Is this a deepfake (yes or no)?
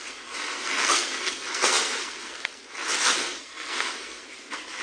yes